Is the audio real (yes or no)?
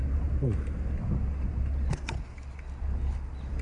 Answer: yes